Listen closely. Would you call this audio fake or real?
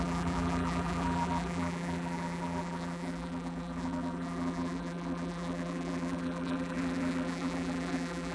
fake